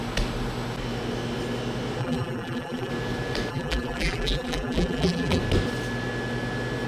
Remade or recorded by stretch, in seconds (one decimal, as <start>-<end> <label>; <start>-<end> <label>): 0.0-2.0 recorded; 2.0-2.9 remade; 2.9-3.5 recorded; 3.5-5.4 remade; 5.4-6.9 recorded

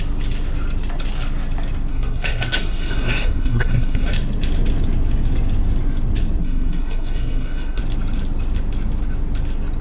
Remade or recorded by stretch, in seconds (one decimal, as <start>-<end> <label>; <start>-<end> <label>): 0.0-1.9 recorded; 1.9-4.1 remade; 4.1-6.4 recorded; 6.4-7.8 remade; 7.8-9.8 recorded

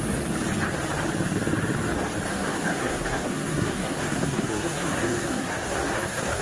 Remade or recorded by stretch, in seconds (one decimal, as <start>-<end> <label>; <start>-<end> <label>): 0.0-2.3 recorded; 2.3-6.4 remade

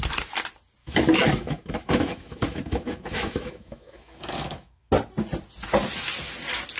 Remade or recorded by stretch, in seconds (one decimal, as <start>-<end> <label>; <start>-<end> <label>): 0.0-0.8 recorded; 0.8-4.9 remade; 4.9-6.8 recorded

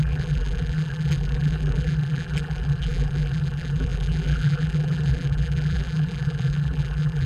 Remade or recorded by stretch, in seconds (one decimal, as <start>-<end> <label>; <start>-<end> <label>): 0.0-7.3 remade

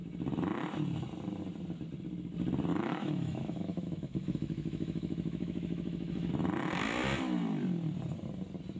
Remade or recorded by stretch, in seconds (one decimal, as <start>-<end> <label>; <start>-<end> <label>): 0.0-2.7 recorded; 2.7-6.3 remade; 6.3-8.8 recorded